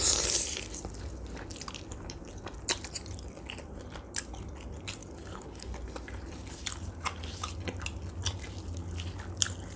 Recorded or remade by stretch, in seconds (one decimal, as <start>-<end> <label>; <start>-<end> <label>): 0.0-5.0 recorded; 5.0-5.7 remade; 5.7-9.8 recorded